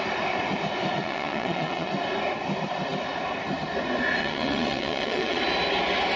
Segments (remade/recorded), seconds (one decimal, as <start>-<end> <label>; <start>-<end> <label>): 0.0-1.0 recorded; 1.0-1.9 remade; 1.9-4.2 recorded; 4.2-5.4 remade; 5.4-6.2 recorded